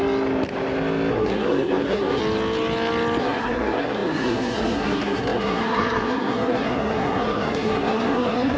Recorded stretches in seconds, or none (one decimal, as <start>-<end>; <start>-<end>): 0.0-1.1; 2.2-3.2